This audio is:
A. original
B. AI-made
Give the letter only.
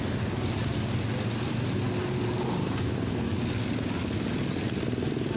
A